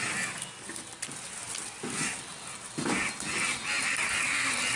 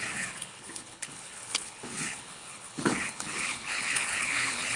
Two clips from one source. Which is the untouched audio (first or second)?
first